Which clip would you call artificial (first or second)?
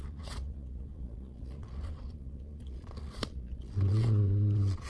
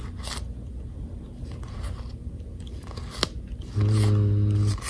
first